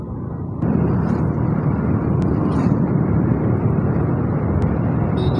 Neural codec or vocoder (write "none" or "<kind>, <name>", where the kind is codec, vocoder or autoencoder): none